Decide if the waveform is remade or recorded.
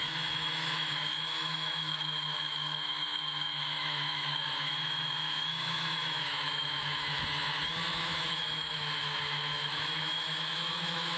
remade